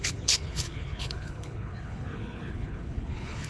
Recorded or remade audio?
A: remade